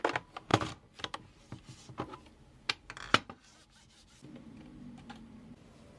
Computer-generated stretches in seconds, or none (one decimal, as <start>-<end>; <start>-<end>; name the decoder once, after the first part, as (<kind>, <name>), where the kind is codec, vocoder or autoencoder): none